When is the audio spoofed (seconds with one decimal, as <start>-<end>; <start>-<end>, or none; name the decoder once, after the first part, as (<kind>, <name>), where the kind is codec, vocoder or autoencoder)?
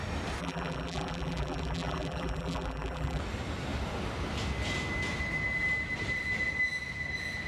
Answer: 0.4-3.2 (vocoder, BigVGAN v2)